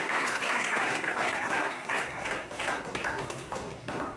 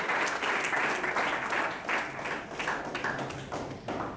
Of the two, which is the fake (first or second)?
first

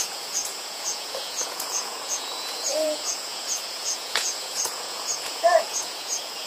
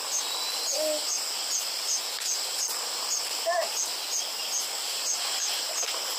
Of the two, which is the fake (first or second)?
first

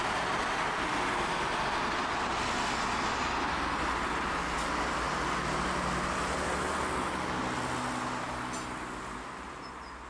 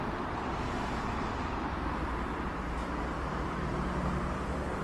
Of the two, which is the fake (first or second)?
second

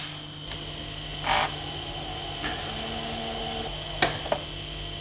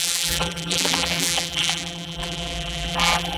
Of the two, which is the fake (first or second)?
second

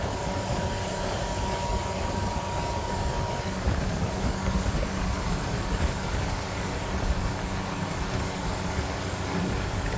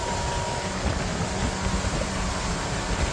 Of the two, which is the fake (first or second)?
first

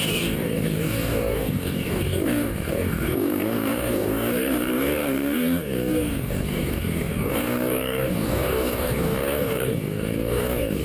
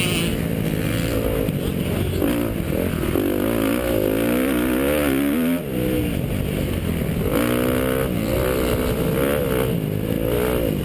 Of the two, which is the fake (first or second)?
first